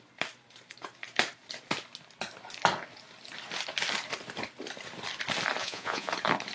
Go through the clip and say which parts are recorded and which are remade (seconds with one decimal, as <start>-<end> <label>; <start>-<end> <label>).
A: 0.0-5.6 recorded; 5.6-6.1 remade; 6.1-6.5 recorded